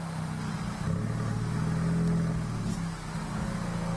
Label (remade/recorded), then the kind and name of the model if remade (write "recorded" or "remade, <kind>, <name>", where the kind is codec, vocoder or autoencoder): recorded